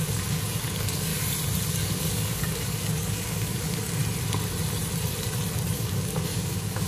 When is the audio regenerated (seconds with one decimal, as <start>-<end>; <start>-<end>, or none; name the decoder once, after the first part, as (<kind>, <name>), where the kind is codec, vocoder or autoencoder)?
0.0-1.1 (codec, DAC); 1.7-4.0; 5.7-6.9